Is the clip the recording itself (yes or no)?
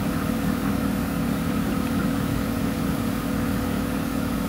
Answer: no